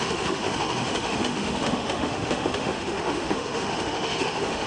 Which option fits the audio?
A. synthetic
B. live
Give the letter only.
A